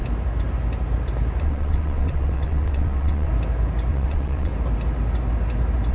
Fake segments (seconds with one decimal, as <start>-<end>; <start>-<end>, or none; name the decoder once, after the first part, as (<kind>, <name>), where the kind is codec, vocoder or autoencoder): 1.4-3.3 (vocoder, WaveNeXt); 3.9-4.5